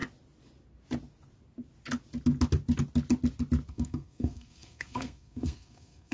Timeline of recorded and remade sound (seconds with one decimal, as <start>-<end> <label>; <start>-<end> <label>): 0.0-3.7 recorded; 3.7-6.1 remade